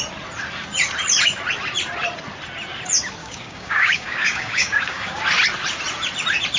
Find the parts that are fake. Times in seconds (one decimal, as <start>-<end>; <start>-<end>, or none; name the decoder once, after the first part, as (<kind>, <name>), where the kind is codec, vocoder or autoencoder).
3.2-5.2 (codec, DAC)